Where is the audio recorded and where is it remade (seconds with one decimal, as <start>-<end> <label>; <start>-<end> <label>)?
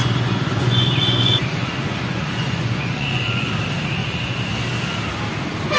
0.0-3.5 remade; 3.5-4.0 recorded; 4.0-4.5 remade; 4.5-5.8 recorded